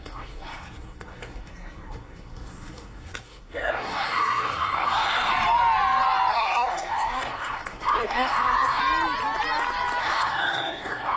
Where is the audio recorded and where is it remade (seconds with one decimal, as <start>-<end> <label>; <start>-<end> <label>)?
0.0-5.3 remade; 5.3-6.3 recorded; 6.3-8.8 remade; 8.8-10.0 recorded; 10.0-11.2 remade